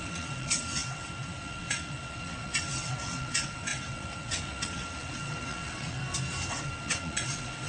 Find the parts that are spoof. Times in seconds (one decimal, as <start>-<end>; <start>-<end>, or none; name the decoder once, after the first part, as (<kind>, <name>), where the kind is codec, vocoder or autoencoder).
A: 0.0-6.0 (vocoder, WaveNeXt); 6.5-7.7